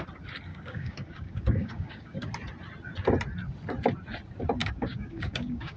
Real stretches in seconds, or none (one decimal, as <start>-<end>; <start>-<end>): 0.0-0.5; 2.3-4.6